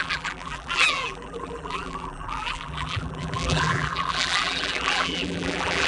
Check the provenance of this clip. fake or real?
fake